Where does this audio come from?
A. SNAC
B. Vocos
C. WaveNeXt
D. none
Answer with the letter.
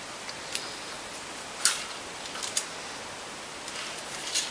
D